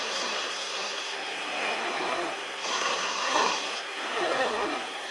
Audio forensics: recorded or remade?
remade